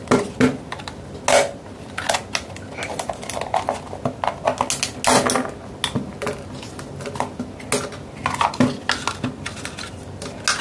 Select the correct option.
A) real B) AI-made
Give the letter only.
A